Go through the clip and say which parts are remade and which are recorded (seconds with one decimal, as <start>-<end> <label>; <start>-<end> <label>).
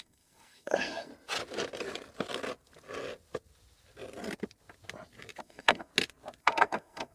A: 0.0-1.1 remade; 1.1-5.4 recorded; 5.4-5.9 remade; 5.9-6.4 recorded; 6.4-7.1 remade